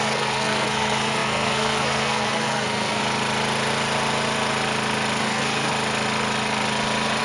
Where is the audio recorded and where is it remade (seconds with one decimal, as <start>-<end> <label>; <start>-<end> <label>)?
0.0-3.0 remade; 3.0-5.2 recorded; 5.2-5.7 remade; 5.7-7.2 recorded